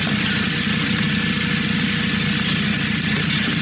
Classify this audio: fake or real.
real